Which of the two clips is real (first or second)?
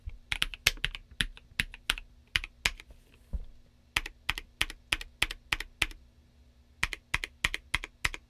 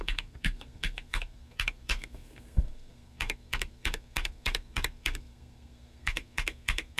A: first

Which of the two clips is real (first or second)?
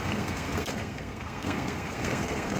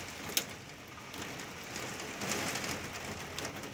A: second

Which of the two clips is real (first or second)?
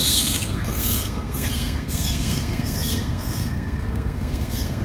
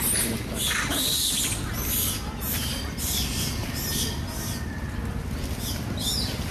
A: second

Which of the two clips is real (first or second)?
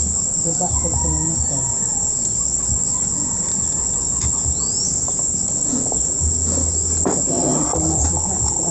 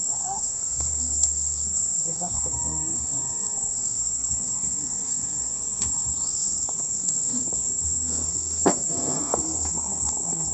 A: first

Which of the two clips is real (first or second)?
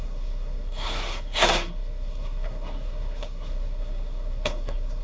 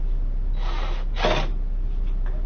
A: second